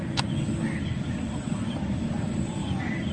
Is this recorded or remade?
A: recorded